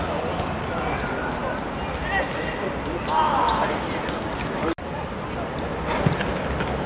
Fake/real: real